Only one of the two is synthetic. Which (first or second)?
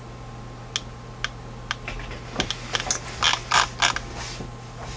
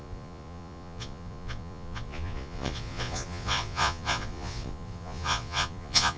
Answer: second